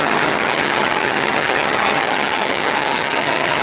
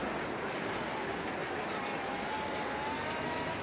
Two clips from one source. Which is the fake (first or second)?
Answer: first